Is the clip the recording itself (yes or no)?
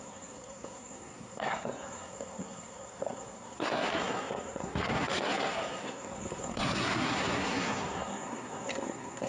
no